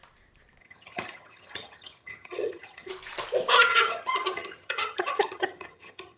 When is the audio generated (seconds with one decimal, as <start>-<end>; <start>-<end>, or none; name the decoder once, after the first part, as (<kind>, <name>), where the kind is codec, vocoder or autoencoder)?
0.6-2.9 (vocoder, HiFi-GAN); 3.7-6.2